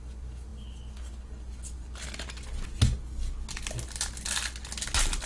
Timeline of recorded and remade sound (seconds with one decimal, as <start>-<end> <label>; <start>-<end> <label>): 0.0-5.3 recorded

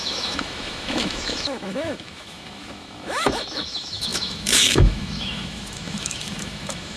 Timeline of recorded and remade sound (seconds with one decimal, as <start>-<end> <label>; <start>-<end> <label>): 0.0-7.0 remade

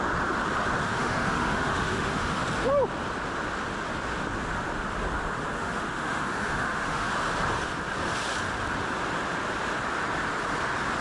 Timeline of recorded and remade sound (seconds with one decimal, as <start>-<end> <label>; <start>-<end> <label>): 0.0-0.8 recorded; 0.8-2.4 remade; 2.4-5.6 recorded; 5.6-7.1 remade; 7.1-11.0 recorded

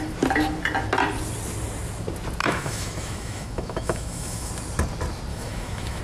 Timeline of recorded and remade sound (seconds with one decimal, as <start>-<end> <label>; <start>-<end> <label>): 0.0-2.4 recorded; 2.4-4.5 remade; 4.5-5.3 recorded; 5.3-6.0 remade

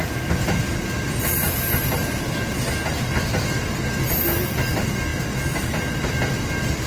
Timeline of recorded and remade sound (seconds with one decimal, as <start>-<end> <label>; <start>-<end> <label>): 0.0-6.9 recorded